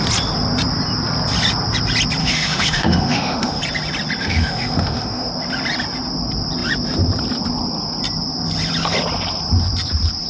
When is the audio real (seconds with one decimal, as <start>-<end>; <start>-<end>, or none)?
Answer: 0.0-2.2; 3.6-4.2; 5.3-10.3